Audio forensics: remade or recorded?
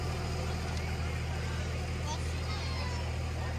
recorded